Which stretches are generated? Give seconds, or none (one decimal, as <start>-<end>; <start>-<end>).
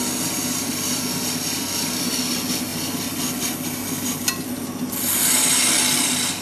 none